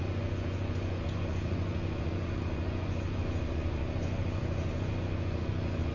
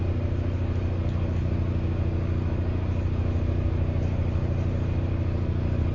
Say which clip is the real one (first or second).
second